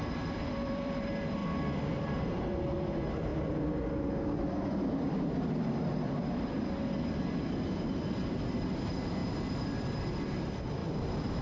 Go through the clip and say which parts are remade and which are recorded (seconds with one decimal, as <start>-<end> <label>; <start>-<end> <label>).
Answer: 0.0-3.3 remade; 3.3-8.1 recorded; 8.1-9.2 remade; 9.2-9.7 recorded; 9.7-11.4 remade